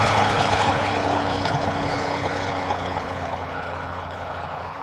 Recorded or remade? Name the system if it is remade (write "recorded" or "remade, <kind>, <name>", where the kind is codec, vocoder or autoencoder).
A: remade, codec, HILCodec